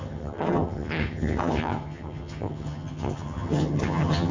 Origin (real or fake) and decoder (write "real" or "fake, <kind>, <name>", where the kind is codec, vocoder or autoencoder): fake, vocoder, HiFi-GAN